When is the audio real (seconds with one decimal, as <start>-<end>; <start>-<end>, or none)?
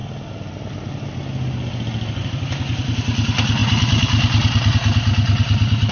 0.0-5.9